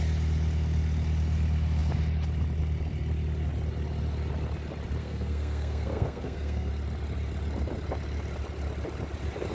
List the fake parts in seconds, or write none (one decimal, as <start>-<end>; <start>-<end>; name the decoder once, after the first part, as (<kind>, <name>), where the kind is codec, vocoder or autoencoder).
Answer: 5.0-6.7 (codec, SNAC)